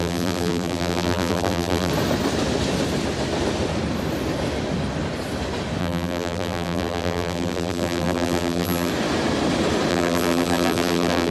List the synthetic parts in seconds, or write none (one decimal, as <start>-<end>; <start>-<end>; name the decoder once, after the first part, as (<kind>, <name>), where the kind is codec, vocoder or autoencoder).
0.0-1.9 (vocoder, BigVGAN v2); 5.8-8.9; 9.9-11.3